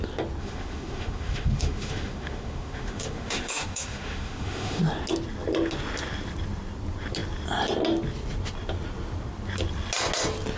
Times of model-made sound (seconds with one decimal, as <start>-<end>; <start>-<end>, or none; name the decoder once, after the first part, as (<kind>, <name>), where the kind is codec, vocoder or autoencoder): 0.4-4.8 (autoencoder, DAC-VAE)